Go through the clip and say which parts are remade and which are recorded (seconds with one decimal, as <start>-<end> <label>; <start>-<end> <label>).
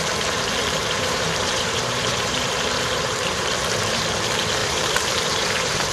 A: 0.0-0.6 recorded; 0.6-4.1 remade; 4.1-4.6 recorded; 4.6-5.9 remade